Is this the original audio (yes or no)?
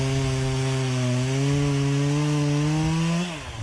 yes